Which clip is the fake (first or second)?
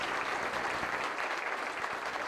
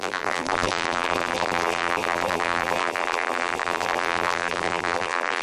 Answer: second